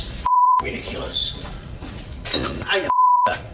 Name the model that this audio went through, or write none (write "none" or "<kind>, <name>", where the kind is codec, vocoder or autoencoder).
vocoder, Vocos